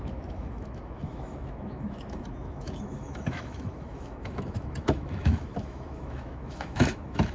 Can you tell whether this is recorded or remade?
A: remade